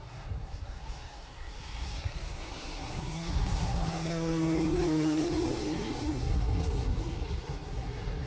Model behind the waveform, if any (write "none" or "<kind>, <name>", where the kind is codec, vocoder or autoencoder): codec, SNAC